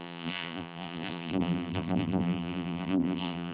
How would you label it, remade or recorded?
remade